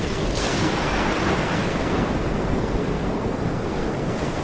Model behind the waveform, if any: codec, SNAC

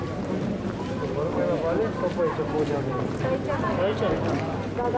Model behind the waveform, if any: none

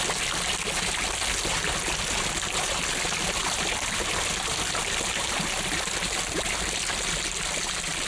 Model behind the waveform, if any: none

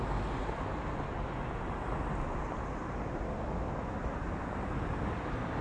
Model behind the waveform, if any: none